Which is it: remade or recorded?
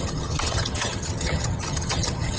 remade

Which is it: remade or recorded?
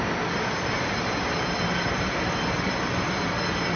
recorded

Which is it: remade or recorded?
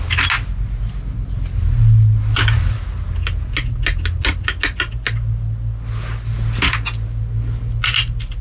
recorded